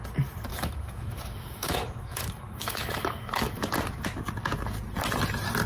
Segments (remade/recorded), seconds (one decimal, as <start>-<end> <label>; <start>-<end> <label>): 0.0-0.5 recorded; 0.5-3.7 remade; 3.7-5.7 recorded